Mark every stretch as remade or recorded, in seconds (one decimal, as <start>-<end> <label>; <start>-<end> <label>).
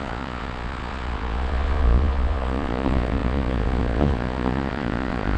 0.0-5.4 remade